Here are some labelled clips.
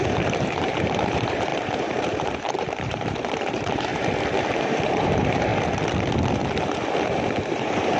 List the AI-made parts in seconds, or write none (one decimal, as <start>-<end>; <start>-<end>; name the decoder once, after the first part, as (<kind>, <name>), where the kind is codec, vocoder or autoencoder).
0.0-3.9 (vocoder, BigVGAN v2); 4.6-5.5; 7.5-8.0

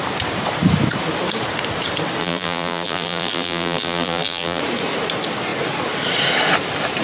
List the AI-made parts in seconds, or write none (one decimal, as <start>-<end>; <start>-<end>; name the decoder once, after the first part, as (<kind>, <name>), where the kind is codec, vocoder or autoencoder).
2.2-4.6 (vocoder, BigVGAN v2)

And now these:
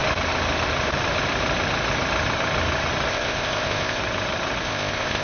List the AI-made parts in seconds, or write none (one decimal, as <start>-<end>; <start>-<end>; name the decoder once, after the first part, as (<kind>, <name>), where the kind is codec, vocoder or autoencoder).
3.1-4.0 (codec, ZipCodec); 4.6-5.2

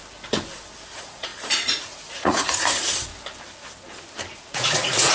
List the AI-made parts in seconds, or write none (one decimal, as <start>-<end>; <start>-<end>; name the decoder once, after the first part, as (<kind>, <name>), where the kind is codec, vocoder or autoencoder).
0.9-3.1 (vocoder, Vocos); 4.3-5.1